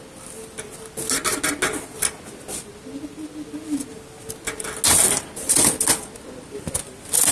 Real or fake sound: real